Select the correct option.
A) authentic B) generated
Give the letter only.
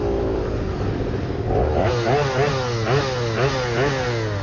A